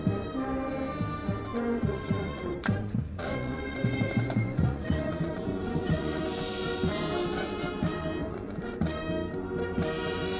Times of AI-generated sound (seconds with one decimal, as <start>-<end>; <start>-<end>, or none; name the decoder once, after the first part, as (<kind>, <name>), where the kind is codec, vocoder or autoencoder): 1.5-6.2 (vocoder, Vocos); 8.2-9.0